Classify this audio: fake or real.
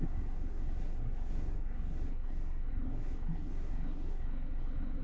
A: fake